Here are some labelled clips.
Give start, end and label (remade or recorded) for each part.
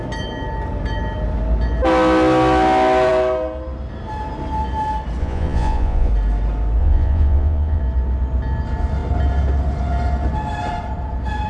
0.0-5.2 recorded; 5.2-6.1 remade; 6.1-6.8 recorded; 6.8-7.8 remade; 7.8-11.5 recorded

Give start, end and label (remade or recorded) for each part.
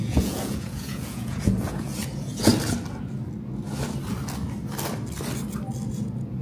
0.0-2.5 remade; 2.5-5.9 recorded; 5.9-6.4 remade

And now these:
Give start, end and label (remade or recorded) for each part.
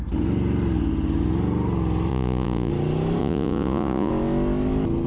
0.0-2.1 recorded; 2.1-2.7 remade; 2.7-3.2 recorded; 3.2-4.1 remade; 4.1-5.1 recorded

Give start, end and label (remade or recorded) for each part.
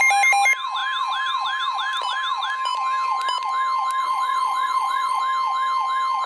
0.0-4.0 recorded; 4.0-5.2 remade; 5.2-6.3 recorded